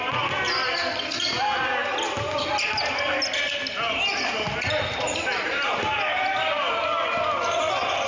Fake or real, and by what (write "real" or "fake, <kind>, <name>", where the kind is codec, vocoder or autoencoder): real